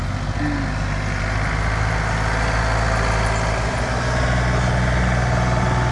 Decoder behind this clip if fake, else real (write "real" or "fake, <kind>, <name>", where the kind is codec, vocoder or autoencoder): real